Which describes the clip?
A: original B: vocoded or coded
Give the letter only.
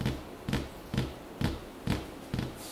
A